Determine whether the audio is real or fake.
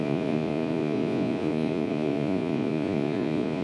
fake